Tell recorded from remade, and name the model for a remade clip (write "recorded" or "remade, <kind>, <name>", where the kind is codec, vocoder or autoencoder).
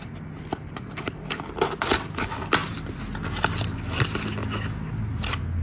recorded